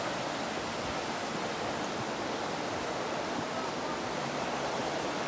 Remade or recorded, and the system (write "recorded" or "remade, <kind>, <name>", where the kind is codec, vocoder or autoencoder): recorded